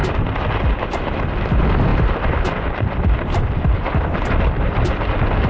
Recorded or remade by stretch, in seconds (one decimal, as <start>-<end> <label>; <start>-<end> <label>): 0.0-1.0 remade; 1.0-1.9 recorded; 1.9-5.5 remade